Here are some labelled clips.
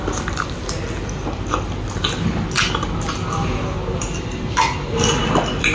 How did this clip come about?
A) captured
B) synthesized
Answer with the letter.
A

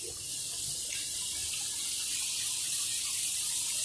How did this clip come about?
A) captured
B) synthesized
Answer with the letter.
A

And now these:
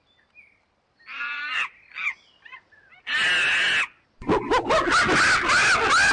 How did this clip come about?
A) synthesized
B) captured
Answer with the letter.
B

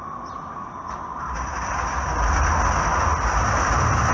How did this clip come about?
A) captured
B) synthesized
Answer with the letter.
A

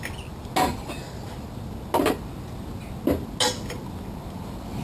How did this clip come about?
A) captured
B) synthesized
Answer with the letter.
A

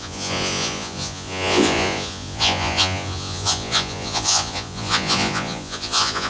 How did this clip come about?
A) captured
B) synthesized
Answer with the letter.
B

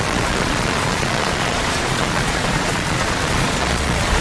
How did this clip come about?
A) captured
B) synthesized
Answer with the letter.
B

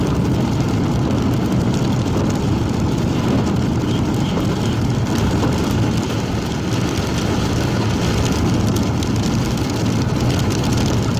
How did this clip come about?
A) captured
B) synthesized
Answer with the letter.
A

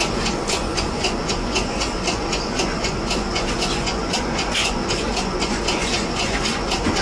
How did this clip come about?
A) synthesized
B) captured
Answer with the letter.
A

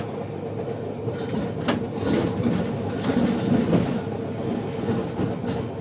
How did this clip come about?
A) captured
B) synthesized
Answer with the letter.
A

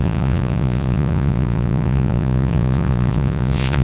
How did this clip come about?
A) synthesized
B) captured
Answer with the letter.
A